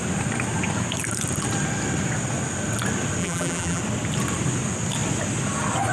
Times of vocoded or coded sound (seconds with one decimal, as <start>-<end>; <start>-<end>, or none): 3.2-3.8